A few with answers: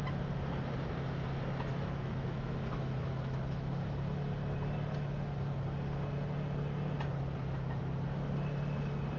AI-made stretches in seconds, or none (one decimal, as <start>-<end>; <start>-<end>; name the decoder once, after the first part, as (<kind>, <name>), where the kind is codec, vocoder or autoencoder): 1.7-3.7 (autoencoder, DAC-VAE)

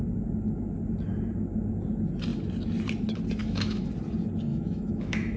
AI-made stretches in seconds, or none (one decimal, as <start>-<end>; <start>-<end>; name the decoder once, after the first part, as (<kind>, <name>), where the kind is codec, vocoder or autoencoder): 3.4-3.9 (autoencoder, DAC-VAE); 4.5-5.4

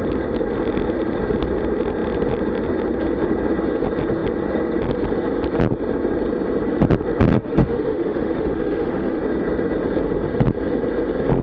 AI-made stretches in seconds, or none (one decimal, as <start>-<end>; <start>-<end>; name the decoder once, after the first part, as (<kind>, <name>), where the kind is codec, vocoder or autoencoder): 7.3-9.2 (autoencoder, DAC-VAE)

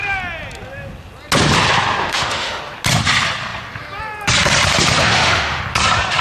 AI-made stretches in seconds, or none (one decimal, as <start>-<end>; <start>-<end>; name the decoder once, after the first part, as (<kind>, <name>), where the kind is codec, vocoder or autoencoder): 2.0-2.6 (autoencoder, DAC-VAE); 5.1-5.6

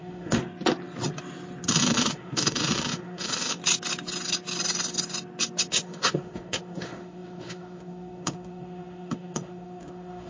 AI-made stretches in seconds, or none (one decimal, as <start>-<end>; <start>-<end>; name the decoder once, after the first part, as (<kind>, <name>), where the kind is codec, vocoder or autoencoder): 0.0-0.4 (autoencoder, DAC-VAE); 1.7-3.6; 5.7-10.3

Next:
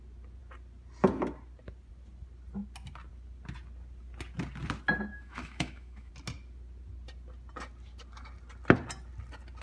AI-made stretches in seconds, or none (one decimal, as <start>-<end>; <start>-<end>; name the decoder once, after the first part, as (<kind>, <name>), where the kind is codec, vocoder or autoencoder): 5.1-6.1 (autoencoder, DAC-VAE)

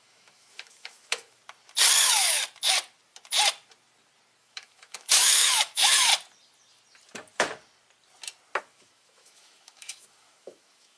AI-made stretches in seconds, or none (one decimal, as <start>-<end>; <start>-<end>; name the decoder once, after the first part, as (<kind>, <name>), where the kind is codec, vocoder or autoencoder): 0.0-1.4 (autoencoder, DAC-VAE); 2.0-2.4; 4.4-6.1; 8.6-11.0